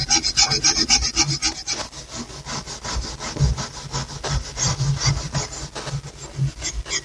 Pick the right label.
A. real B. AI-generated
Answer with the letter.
A